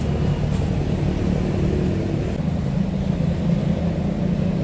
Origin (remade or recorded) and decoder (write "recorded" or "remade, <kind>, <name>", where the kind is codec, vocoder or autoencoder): recorded